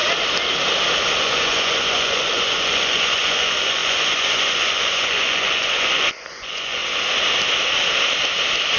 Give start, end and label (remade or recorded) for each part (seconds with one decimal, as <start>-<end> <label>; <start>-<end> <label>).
0.0-1.2 recorded; 1.2-6.8 remade; 6.8-8.8 recorded

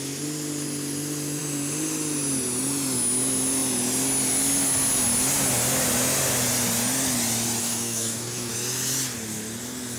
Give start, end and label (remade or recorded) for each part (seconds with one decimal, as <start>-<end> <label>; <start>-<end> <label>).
0.0-7.6 recorded; 7.6-8.5 remade; 8.5-10.0 recorded

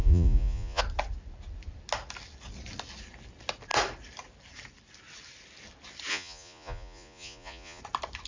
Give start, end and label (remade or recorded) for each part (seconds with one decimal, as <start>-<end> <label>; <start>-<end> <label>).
0.0-0.8 remade; 0.8-6.1 recorded; 6.1-7.8 remade; 7.8-8.3 recorded

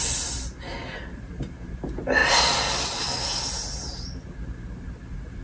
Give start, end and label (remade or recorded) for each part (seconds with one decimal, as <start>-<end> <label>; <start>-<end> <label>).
0.0-5.4 recorded

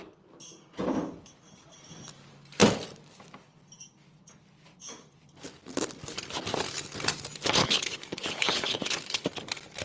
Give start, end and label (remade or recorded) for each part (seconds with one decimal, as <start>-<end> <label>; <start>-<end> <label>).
0.0-7.6 recorded; 7.6-9.2 remade; 9.2-9.8 recorded

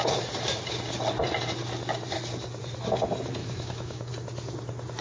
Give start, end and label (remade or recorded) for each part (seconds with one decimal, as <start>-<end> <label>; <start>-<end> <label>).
0.0-3.4 recorded; 3.4-4.1 remade; 4.1-5.0 recorded

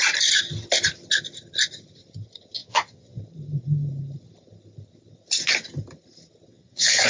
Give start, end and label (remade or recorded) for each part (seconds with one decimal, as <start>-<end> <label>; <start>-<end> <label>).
0.0-2.6 recorded; 2.6-3.2 remade; 3.2-6.5 recorded; 6.5-7.1 remade

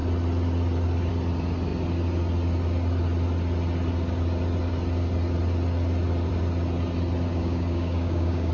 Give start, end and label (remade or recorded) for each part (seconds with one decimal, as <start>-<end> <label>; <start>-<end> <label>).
0.0-7.3 recorded; 7.3-8.5 remade